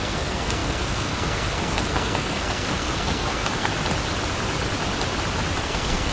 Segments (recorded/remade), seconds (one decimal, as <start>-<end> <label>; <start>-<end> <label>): 0.0-3.7 remade; 3.7-5.6 recorded; 5.6-6.1 remade